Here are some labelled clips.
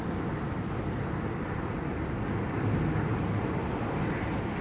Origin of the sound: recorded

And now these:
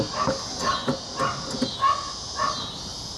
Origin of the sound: recorded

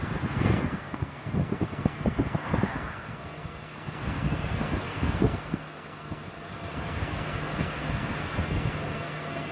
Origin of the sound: remade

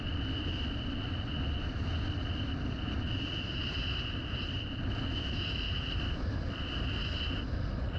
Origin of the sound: recorded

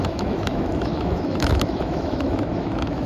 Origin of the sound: remade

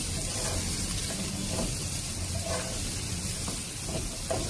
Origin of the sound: recorded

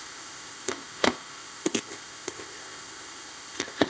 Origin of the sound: remade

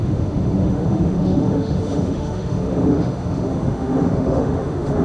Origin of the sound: remade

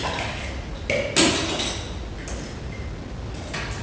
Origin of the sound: recorded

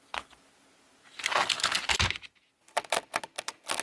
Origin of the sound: recorded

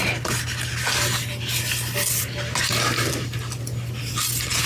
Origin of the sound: recorded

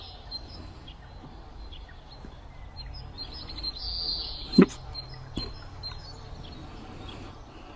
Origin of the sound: recorded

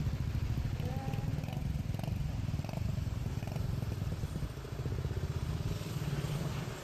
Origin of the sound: remade